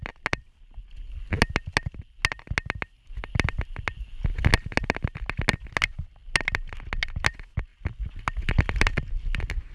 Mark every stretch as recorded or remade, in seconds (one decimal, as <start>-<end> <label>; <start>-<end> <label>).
0.0-9.7 recorded